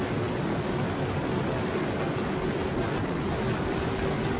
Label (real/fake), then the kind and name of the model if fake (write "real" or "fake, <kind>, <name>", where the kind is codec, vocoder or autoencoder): real